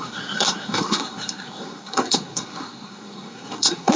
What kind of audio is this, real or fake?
fake